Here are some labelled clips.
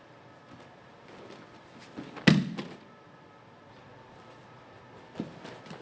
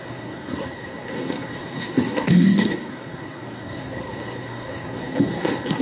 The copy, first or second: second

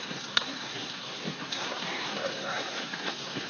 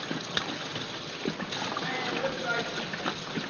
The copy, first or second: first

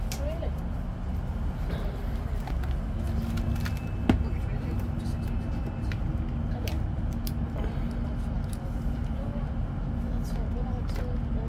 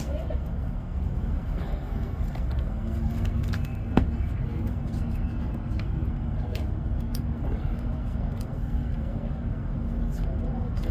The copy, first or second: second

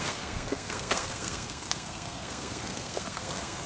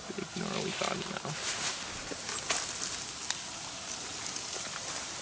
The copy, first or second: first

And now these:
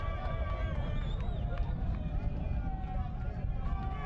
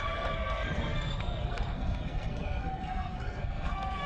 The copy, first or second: second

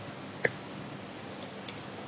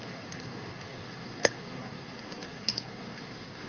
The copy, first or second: second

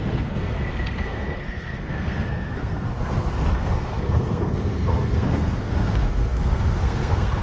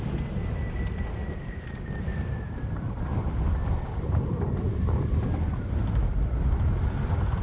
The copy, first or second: first